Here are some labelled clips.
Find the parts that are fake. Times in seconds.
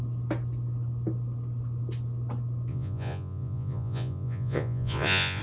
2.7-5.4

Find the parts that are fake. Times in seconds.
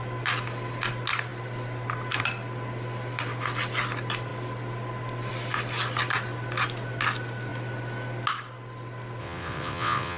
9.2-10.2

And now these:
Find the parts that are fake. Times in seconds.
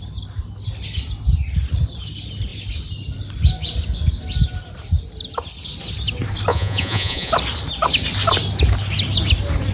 6.5-7.3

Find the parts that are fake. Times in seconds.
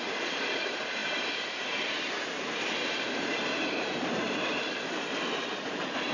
0.0-6.1